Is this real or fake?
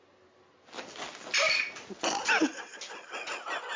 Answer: real